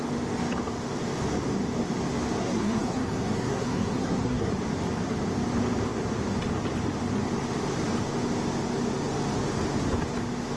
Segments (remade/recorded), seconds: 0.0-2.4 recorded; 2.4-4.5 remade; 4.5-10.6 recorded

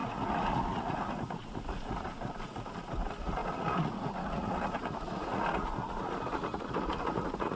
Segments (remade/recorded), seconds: 0.0-7.6 remade

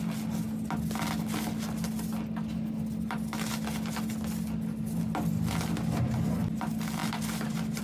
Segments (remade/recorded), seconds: 0.0-7.8 recorded

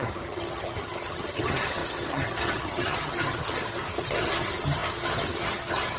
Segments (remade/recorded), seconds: 0.0-6.0 remade